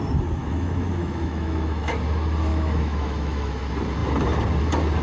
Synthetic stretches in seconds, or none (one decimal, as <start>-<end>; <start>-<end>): 0.4-1.9; 2.5-3.5